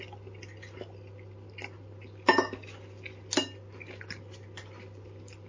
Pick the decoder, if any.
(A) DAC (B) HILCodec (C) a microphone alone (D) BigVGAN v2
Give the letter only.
C